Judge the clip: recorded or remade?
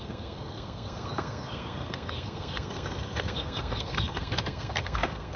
remade